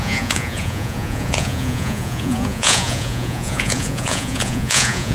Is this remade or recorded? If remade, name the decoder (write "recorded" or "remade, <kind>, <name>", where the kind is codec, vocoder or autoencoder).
remade, vocoder, Vocos